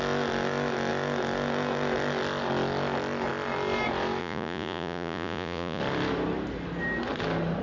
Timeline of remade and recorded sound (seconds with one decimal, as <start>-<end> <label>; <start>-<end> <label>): 0.0-4.2 recorded; 4.2-5.8 remade; 5.8-7.6 recorded